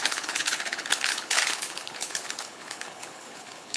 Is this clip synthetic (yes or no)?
yes